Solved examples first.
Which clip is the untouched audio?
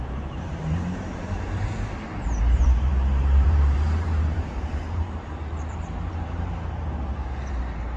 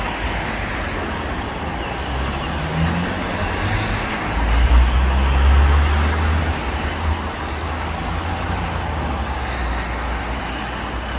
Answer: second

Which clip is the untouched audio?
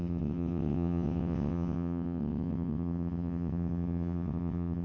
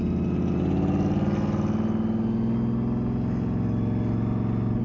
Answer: second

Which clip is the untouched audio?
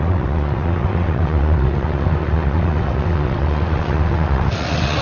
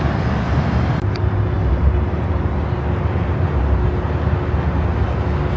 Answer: second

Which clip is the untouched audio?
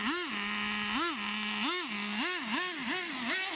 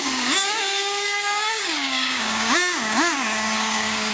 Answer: first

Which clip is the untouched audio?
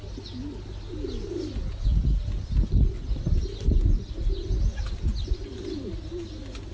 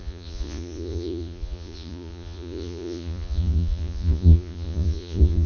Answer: first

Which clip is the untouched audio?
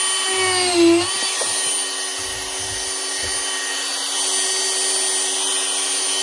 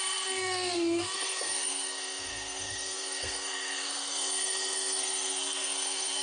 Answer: first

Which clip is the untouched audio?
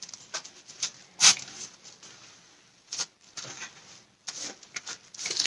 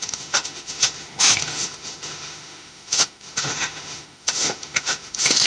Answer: first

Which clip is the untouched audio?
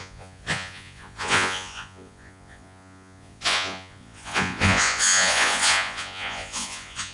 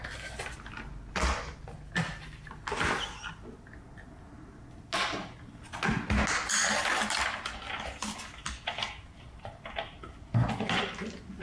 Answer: second